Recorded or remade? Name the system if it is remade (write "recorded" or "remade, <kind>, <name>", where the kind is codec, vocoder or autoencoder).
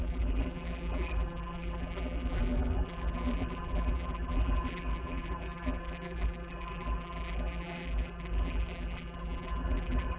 remade, vocoder, BigVGAN v2